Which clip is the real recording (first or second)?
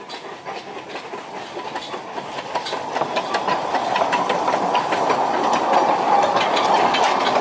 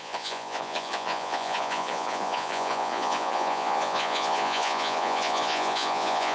first